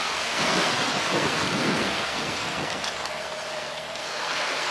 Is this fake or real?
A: fake